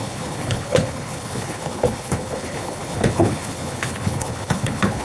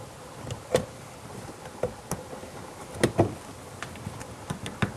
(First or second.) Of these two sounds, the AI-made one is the first